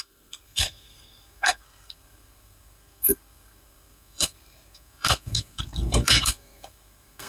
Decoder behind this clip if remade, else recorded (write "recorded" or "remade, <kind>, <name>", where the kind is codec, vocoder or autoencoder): remade, codec, SNAC